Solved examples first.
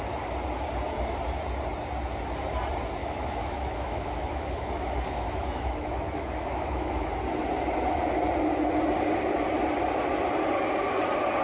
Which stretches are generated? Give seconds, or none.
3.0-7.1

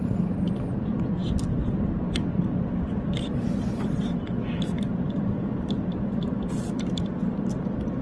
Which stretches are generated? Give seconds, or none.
none

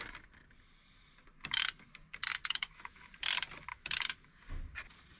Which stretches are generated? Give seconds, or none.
2.3-3.1; 3.7-4.3

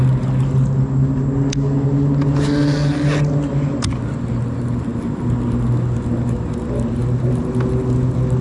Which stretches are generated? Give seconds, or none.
none

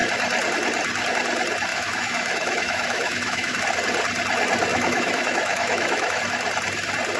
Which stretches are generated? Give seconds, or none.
1.7-3.6; 4.7-6.2